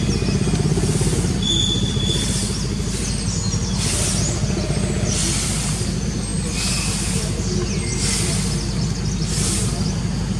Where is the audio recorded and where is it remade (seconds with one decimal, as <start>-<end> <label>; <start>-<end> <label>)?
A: 0.0-10.4 recorded

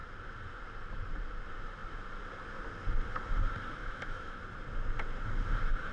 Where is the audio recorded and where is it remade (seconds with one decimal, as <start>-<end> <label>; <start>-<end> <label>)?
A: 0.0-3.8 recorded; 3.8-4.4 remade; 4.4-5.9 recorded

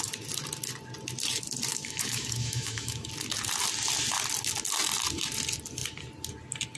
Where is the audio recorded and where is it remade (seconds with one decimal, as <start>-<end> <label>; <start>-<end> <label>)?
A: 0.0-1.7 recorded; 1.7-3.1 remade; 3.1-6.8 recorded

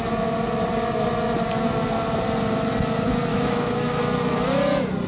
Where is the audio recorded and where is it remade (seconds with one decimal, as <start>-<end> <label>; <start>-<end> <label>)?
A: 0.0-3.3 recorded; 3.3-4.0 remade; 4.0-5.1 recorded